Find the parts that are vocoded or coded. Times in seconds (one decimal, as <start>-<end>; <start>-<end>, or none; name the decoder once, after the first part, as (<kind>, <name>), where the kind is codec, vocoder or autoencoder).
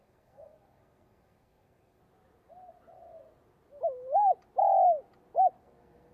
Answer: 0.0-2.0 (codec, SNAC); 5.6-6.1